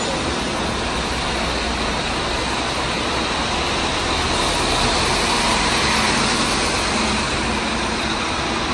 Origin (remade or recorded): recorded